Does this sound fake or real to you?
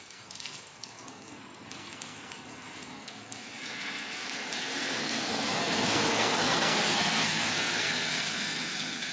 fake